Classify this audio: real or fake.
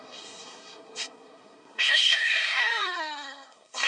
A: fake